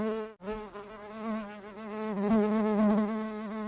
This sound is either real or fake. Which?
real